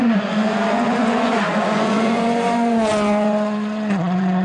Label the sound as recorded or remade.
remade